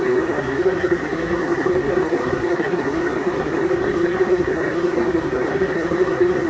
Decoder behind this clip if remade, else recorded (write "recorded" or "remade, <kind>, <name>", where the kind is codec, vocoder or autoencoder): remade, codec, SNAC